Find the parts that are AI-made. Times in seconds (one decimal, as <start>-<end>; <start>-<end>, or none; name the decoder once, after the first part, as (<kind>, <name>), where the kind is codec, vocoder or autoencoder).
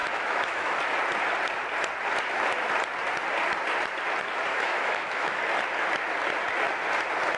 0.0-0.8 (autoencoder, DAC-VAE); 4.5-5.4